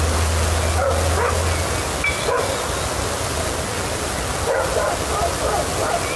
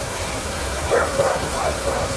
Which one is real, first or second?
first